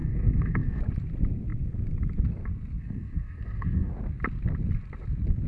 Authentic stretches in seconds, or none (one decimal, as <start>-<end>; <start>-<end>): 0.8-2.8; 3.9-5.5